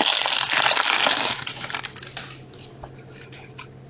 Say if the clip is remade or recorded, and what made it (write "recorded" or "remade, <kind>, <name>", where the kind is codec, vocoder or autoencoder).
recorded